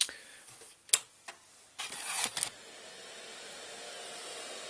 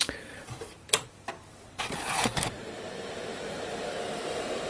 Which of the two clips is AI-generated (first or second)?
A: second